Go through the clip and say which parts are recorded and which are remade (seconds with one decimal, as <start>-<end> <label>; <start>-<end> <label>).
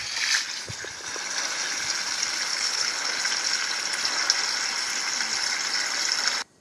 0.0-2.5 recorded; 2.5-3.2 remade; 3.2-6.6 recorded